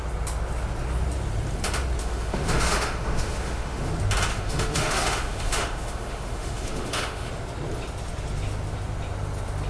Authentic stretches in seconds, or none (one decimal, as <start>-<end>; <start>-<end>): 0.0-2.0; 3.9-4.3; 7.3-9.7